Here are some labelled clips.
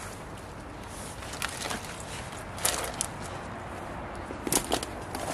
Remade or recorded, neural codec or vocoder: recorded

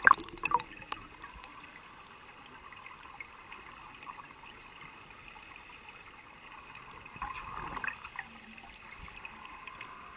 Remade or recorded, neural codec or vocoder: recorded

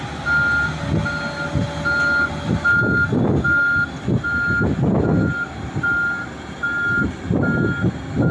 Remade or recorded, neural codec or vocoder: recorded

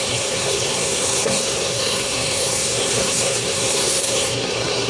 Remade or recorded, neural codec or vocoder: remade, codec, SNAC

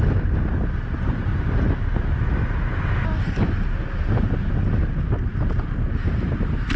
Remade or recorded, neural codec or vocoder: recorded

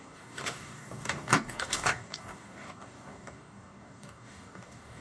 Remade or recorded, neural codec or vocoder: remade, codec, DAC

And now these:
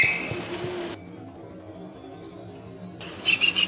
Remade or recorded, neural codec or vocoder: recorded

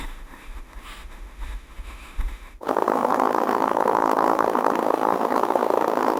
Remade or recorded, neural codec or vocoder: remade, autoencoder, DAC-VAE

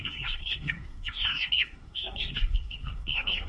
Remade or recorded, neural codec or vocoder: remade, codec, SNAC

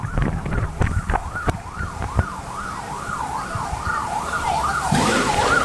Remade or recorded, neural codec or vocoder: remade, vocoder, BigVGAN v2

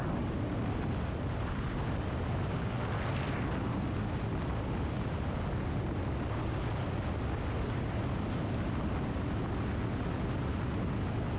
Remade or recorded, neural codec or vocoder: recorded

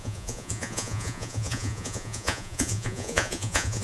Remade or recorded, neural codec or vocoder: remade, vocoder, Vocos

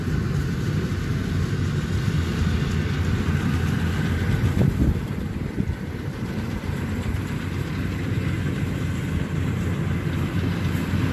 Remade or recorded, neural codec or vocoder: recorded